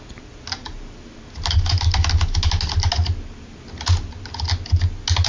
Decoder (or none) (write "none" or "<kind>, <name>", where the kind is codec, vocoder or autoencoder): none